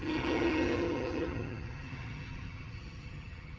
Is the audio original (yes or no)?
no